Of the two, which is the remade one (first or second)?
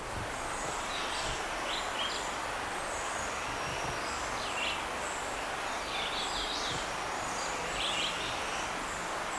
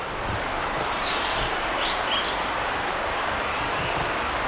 second